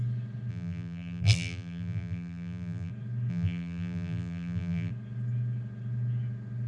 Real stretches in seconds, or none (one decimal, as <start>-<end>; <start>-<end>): 0.0-0.5; 2.9-3.3; 4.9-6.7